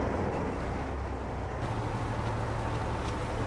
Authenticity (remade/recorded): recorded